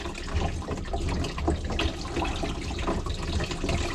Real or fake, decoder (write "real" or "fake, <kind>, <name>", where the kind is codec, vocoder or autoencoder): real